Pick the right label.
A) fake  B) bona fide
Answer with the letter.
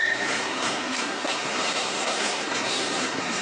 A